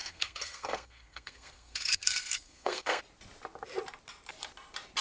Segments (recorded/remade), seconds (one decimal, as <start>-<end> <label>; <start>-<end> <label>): 0.0-3.0 remade; 3.0-5.0 recorded